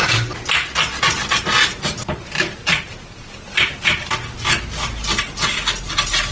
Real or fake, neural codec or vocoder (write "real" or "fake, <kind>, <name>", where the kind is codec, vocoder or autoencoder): real